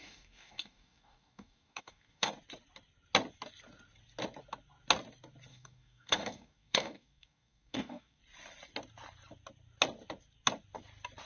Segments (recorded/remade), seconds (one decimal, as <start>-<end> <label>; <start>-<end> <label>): 0.0-2.3 remade; 2.3-5.5 recorded; 5.5-8.2 remade; 8.2-11.2 recorded